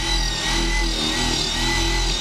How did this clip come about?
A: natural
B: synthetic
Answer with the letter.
A